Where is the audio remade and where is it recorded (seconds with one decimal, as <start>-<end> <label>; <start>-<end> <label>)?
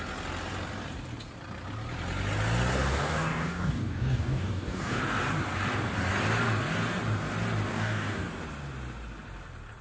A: 0.0-2.9 recorded; 2.9-5.0 remade; 5.0-7.7 recorded; 7.7-8.3 remade; 8.3-9.8 recorded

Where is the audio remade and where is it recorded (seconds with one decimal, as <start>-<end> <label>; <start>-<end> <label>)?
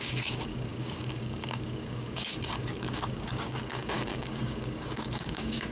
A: 0.0-5.7 remade